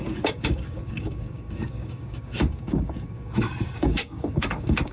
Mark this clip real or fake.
fake